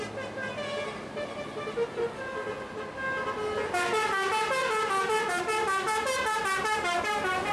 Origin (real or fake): real